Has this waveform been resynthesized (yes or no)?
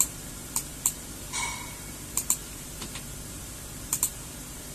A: yes